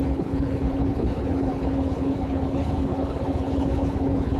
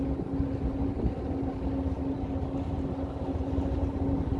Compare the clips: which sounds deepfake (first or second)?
first